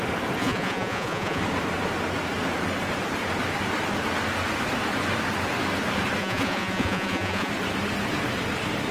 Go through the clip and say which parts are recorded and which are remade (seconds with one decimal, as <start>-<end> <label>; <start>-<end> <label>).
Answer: 0.0-0.4 recorded; 0.4-1.4 remade; 1.4-6.2 recorded; 6.2-7.5 remade; 7.5-8.9 recorded